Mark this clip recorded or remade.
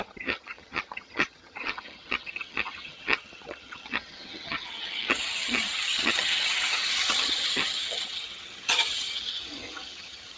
remade